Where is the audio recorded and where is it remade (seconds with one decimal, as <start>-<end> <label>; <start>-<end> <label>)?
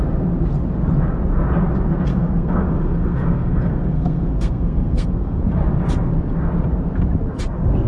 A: 0.0-2.1 recorded; 2.1-5.4 remade; 5.4-7.9 recorded